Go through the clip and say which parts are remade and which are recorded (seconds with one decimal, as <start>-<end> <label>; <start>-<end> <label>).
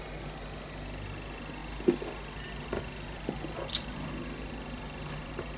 0.0-5.6 recorded